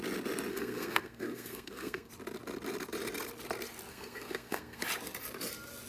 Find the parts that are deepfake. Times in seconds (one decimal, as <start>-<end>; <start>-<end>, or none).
0.5-2.1; 3.9-4.8